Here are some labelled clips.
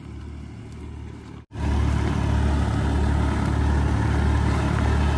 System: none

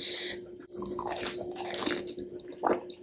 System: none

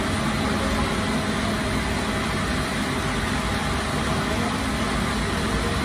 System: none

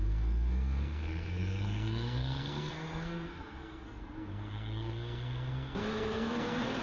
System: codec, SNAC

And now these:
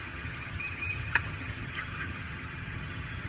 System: vocoder, HiFi-GAN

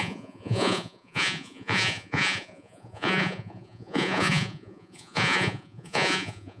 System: vocoder, Vocos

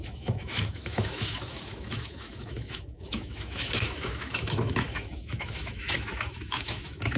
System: autoencoder, DAC-VAE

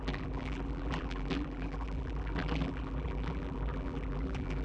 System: vocoder, BigVGAN v2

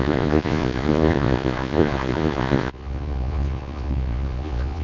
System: vocoder, Vocos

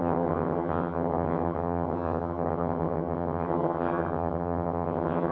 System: vocoder, HiFi-GAN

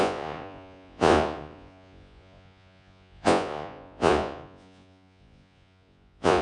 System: vocoder, Vocos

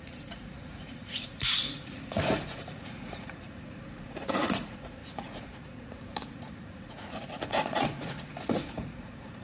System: vocoder, Vocos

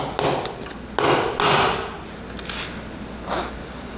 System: none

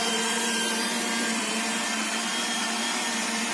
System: vocoder, BigVGAN v2